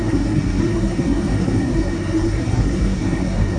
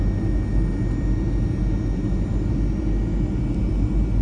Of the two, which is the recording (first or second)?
second